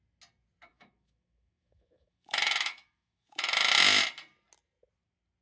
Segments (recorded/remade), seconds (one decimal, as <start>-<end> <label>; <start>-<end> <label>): 0.0-0.7 recorded; 0.7-3.7 remade; 3.7-5.4 recorded